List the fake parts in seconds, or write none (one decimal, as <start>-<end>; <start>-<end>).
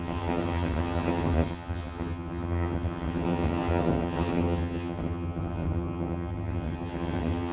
0.0-7.5